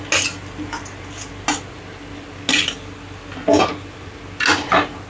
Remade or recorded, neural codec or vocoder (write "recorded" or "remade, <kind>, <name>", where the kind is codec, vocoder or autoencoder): recorded